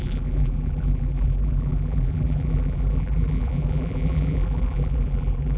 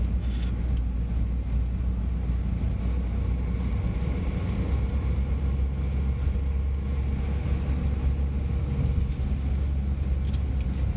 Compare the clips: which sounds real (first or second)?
second